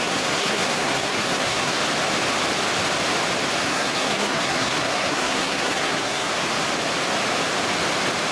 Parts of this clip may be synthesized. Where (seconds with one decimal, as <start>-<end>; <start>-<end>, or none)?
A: 0.0-1.8; 3.6-6.3